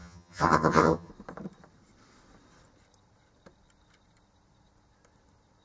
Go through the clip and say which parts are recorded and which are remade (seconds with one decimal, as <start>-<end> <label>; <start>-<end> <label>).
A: 0.0-1.1 remade; 1.1-5.6 recorded